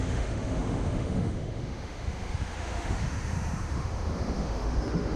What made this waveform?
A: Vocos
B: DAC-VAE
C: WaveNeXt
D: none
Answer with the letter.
B